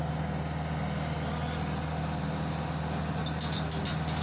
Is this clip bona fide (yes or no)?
yes